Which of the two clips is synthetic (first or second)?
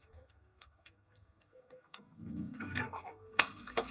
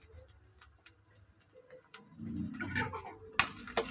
first